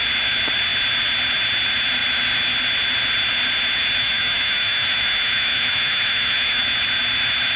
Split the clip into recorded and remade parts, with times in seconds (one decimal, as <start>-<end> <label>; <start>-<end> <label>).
0.0-4.0 recorded; 4.0-6.6 remade; 6.6-7.6 recorded